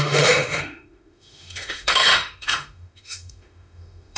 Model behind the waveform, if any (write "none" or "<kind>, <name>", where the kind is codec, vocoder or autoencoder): autoencoder, DAC-VAE